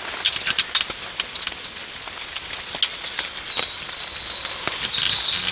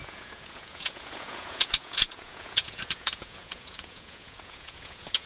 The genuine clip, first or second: first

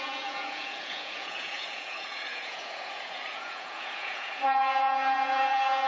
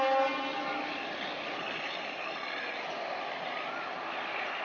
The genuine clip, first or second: second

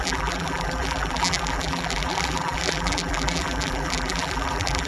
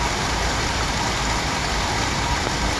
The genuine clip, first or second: second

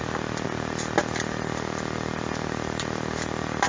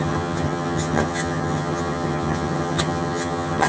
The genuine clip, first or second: first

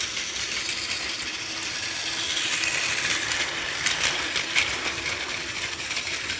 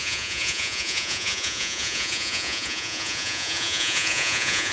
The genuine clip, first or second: first